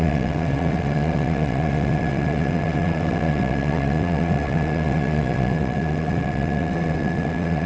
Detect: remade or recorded remade